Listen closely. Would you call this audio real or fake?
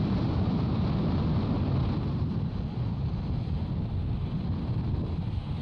real